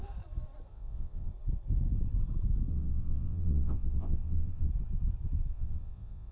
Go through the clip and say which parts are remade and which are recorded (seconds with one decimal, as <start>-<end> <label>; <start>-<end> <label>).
0.0-0.7 recorded; 0.7-1.3 remade; 1.3-2.7 recorded; 2.7-4.7 remade; 4.7-5.5 recorded; 5.5-6.3 remade